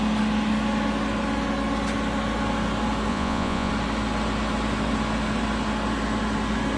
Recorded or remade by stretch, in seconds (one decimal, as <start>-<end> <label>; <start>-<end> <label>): 0.0-3.1 recorded; 3.1-3.7 remade; 3.7-6.8 recorded

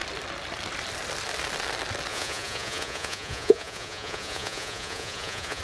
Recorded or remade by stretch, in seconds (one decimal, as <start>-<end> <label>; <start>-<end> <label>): 0.0-2.1 recorded; 2.1-5.6 remade

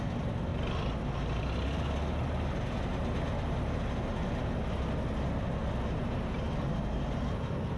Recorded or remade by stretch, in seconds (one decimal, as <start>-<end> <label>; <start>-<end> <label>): 0.0-7.8 recorded

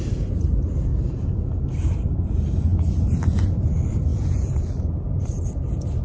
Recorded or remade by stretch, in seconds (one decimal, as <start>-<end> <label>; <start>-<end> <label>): 0.0-4.1 recorded; 4.1-4.7 remade; 4.7-6.0 recorded

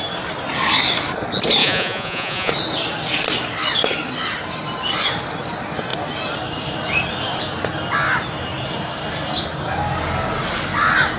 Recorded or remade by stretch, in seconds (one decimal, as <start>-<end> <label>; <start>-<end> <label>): 0.0-1.6 recorded; 1.6-2.5 remade; 2.5-11.2 recorded